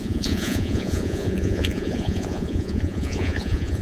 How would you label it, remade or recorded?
remade